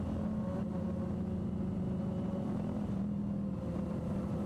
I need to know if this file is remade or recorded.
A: recorded